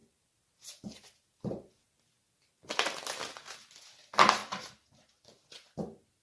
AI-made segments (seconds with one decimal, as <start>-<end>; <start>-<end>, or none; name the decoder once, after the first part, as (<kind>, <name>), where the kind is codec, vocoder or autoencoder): 0.0-2.2 (vocoder, BigVGAN v2); 4.4-5.1